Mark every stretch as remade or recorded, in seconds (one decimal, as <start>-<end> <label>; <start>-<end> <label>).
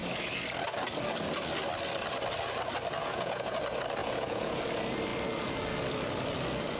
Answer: 0.0-3.0 recorded; 3.0-3.6 remade; 3.6-4.0 recorded; 4.0-4.6 remade; 4.6-6.8 recorded